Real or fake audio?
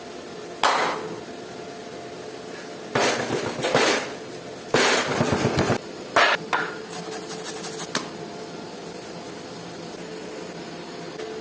real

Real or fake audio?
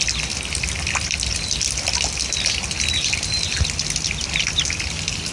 real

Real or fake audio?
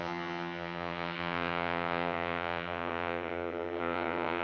fake